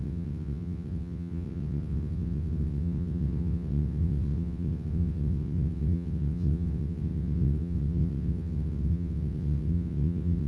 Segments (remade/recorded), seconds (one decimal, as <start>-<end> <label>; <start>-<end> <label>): 0.0-10.5 remade